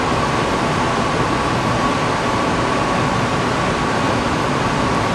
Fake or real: real